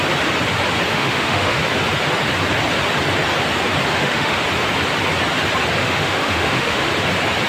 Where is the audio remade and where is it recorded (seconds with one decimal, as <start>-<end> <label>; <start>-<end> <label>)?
0.0-0.9 recorded; 0.9-1.6 remade; 1.6-3.9 recorded; 3.9-4.4 remade; 4.4-5.8 recorded; 5.8-6.9 remade; 6.9-7.5 recorded